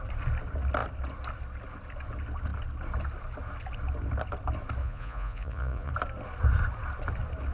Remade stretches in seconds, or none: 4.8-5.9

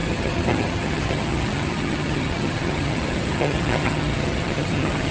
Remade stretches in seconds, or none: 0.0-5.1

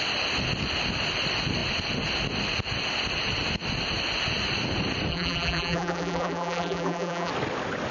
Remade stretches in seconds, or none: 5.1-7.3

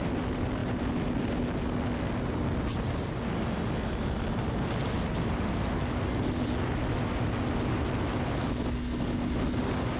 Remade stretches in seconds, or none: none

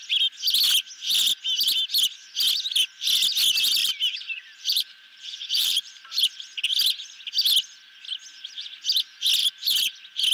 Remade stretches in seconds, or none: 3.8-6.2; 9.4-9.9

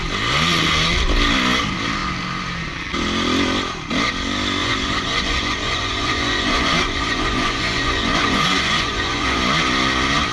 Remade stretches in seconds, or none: 4.6-9.4

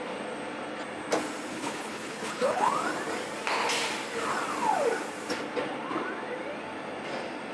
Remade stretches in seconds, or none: 1.5-2.7

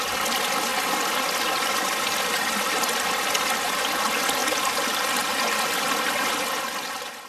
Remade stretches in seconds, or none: 0.7-4.0; 4.4-6.6